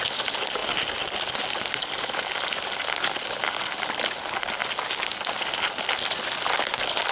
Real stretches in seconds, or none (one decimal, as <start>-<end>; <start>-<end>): 0.0-7.1